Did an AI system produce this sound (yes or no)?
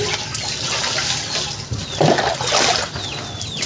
no